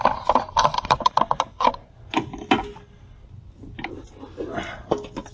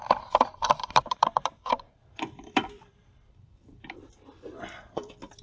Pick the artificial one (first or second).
second